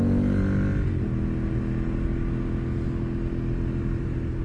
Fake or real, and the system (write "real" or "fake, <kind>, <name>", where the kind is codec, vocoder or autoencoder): real